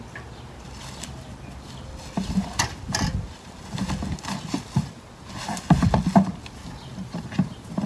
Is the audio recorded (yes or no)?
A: yes